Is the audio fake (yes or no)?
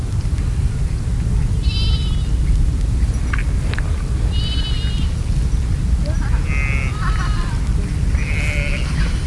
no